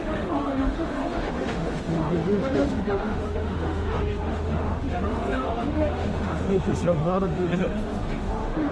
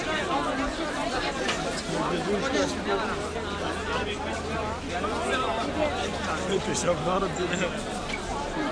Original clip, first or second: second